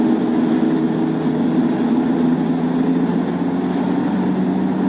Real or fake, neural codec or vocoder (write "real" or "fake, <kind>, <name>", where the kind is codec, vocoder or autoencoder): real